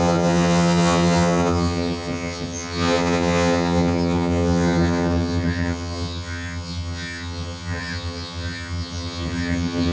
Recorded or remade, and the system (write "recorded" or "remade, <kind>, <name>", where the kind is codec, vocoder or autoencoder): remade, vocoder, HiFi-GAN